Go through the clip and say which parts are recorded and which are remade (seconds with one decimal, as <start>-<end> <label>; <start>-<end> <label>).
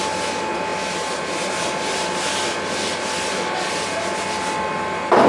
0.0-5.3 recorded